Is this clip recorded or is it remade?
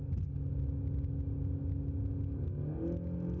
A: recorded